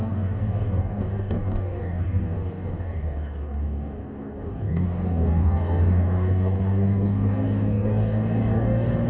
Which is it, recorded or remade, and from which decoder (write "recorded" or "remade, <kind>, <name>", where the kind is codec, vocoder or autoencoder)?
remade, codec, DAC